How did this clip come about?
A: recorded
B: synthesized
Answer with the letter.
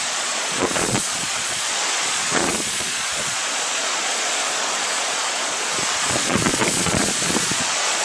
B